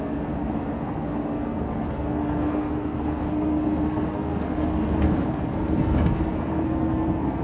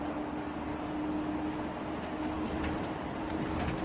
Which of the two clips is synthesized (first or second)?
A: first